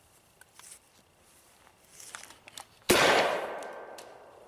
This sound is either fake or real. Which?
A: real